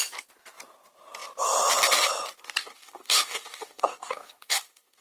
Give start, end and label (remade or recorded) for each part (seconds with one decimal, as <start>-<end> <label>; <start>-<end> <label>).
0.0-2.6 recorded; 2.6-5.0 remade